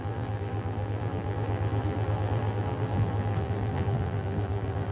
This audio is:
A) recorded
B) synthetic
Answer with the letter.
B